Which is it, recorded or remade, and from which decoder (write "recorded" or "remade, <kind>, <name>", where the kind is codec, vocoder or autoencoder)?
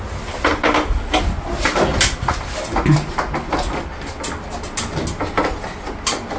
recorded